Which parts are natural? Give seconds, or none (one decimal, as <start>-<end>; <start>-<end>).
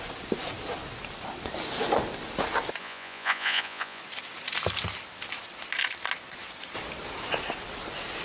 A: 0.0-2.8; 4.0-8.2